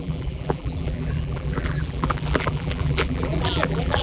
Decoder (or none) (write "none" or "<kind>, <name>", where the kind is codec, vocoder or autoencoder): vocoder, BigVGAN v2